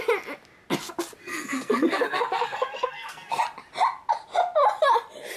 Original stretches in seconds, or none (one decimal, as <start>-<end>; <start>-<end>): 0.0-1.2; 3.4-5.4